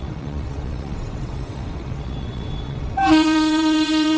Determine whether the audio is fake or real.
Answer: fake